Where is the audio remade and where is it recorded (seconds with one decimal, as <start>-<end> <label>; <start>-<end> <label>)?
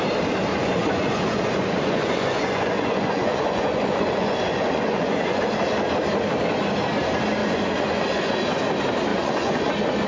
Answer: 0.0-0.5 recorded; 0.5-5.4 remade; 5.4-7.4 recorded; 7.4-8.3 remade; 8.3-9.1 recorded; 9.1-9.7 remade; 9.7-10.1 recorded